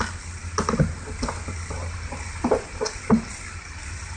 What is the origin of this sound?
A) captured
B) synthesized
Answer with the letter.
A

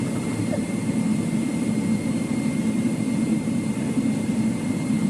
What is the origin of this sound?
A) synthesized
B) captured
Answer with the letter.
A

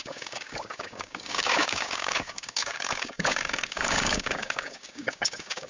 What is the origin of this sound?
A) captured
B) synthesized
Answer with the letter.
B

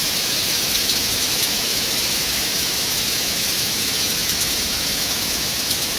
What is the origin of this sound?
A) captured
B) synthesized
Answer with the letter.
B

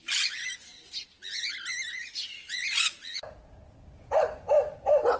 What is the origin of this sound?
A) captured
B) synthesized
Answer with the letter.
A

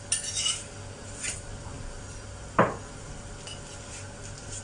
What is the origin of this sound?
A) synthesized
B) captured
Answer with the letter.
B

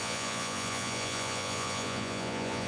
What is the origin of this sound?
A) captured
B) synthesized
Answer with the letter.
B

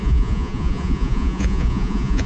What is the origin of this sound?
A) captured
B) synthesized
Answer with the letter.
B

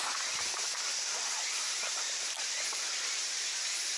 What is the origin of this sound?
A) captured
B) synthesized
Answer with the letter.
A